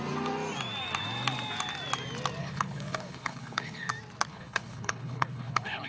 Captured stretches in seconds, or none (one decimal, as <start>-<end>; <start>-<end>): 0.0-2.4; 3.9-4.3